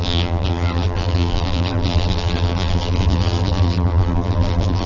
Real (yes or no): no